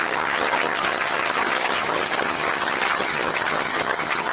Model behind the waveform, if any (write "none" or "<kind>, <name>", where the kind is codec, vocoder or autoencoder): vocoder, HiFi-GAN